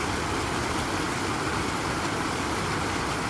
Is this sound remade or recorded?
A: recorded